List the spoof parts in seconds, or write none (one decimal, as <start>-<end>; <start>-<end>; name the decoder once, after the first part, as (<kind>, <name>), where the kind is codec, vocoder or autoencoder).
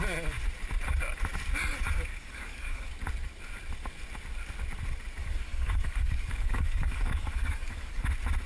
2.1-2.9 (codec, DAC); 5.2-8.0